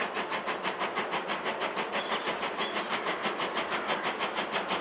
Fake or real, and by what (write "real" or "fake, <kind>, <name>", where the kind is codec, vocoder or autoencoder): real